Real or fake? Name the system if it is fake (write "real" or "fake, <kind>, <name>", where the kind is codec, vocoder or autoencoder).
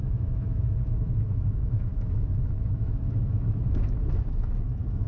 fake, autoencoder, DAC-VAE